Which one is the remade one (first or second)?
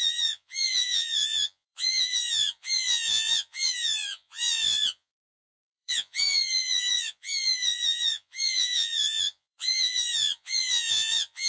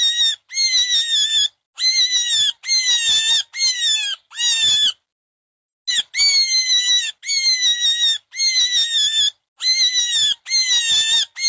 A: first